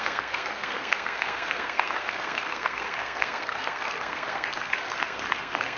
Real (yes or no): no